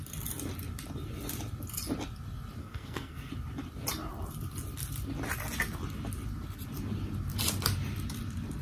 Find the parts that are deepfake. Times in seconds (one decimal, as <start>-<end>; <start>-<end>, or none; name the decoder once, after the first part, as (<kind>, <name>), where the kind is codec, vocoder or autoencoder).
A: 2.6-3.3 (codec, SNAC)